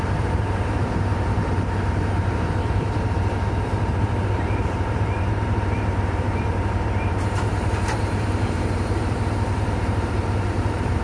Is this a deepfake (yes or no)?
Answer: yes